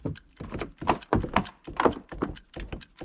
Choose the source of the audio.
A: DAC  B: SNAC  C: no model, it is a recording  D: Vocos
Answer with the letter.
C